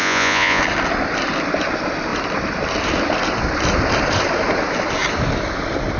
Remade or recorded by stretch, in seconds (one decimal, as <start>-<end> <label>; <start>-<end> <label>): 0.0-0.6 remade; 0.6-6.0 recorded